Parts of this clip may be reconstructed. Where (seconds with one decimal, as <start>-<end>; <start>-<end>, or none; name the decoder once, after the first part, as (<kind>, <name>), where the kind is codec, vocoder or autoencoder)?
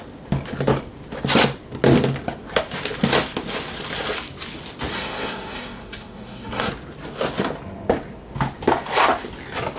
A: 4.9-6.7 (codec, SNAC)